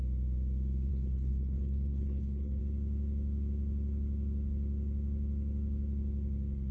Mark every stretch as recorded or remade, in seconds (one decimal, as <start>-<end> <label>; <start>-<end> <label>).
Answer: 0.0-0.9 recorded; 0.9-2.6 remade; 2.6-6.7 recorded